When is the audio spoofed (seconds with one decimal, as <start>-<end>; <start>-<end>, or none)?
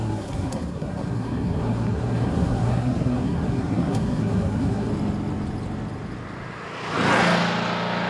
0.0-4.9